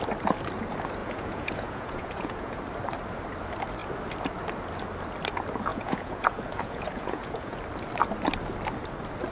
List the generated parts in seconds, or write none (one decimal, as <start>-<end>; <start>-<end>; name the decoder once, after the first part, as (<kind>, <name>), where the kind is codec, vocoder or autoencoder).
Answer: 1.0-2.6 (vocoder, Vocos); 5.7-7.6

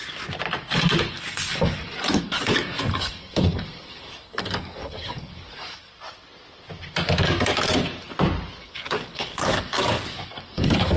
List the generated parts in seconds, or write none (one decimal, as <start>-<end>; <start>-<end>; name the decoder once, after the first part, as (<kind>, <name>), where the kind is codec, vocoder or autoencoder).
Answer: 1.1-5.9 (codec, DAC); 8.6-11.0

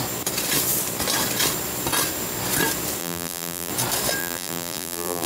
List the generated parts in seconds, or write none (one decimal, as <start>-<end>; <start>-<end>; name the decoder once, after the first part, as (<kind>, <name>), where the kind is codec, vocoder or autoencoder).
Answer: 3.0-3.7 (vocoder, BigVGAN v2); 4.2-5.3